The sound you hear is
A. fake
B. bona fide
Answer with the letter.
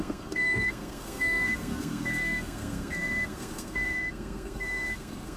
A